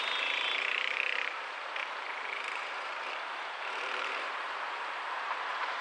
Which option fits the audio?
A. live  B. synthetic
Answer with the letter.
B